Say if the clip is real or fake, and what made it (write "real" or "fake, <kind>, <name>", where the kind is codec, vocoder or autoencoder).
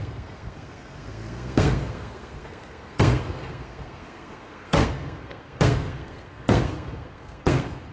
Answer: fake, codec, SNAC